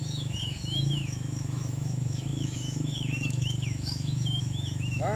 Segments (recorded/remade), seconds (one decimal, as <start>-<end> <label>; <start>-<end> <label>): 0.0-5.2 remade